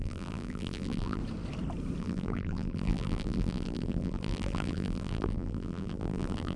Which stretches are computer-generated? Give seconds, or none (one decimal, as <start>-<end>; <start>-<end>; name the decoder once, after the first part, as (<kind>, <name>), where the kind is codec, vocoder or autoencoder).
0.0-1.2 (vocoder, BigVGAN v2); 2.0-6.6